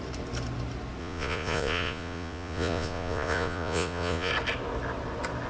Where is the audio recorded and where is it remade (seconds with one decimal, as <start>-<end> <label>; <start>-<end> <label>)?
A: 0.0-1.0 recorded; 1.0-4.3 remade; 4.3-5.5 recorded

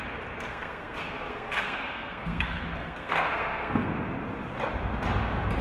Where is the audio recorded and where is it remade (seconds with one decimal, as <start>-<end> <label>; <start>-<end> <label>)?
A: 0.0-0.5 recorded; 0.5-3.9 remade; 3.9-5.6 recorded

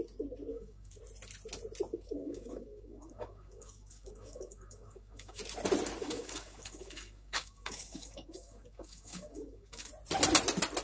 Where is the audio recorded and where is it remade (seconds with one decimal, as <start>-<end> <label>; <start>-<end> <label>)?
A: 0.0-0.5 recorded; 0.5-1.0 remade; 1.0-1.9 recorded; 1.9-5.4 remade; 5.4-6.0 recorded; 6.0-9.9 remade; 9.9-10.8 recorded